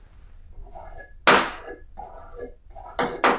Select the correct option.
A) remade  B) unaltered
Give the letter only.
B